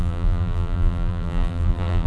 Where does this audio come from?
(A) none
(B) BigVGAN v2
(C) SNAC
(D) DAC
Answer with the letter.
B